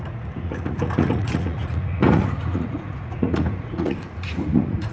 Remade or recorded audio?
remade